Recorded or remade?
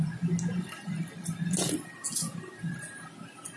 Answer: recorded